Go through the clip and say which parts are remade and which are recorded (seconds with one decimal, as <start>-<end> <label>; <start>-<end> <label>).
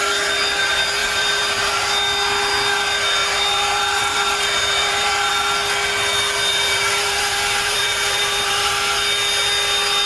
0.0-1.0 recorded; 1.0-1.9 remade; 1.9-3.2 recorded; 3.2-5.3 remade; 5.3-6.5 recorded; 6.5-8.7 remade; 8.7-10.1 recorded